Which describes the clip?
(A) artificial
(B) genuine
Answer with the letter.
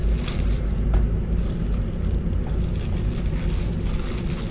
B